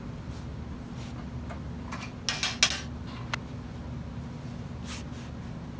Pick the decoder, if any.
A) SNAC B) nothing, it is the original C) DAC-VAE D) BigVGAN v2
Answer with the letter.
B